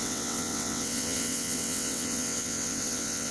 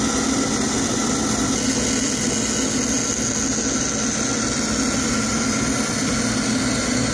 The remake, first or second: first